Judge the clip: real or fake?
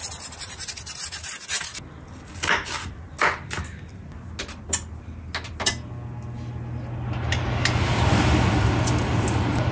real